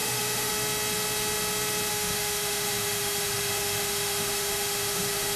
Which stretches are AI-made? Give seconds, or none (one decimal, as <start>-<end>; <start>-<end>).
0.0-0.5; 1.9-5.4